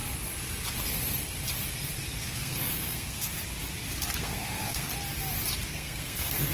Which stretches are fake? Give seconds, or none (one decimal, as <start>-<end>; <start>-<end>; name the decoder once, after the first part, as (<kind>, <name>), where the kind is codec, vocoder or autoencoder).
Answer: 2.2-3.3 (codec, SNAC); 4.2-4.9; 5.7-6.5